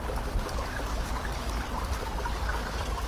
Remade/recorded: remade